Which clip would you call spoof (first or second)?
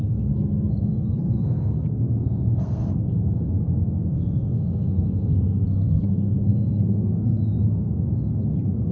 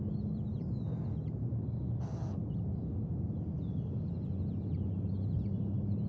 first